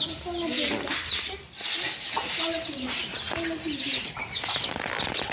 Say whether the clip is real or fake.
real